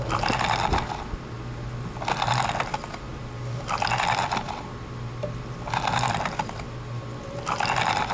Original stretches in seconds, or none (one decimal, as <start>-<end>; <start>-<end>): 0.0-8.1